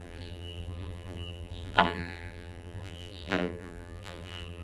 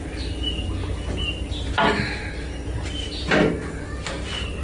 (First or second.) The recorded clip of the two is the second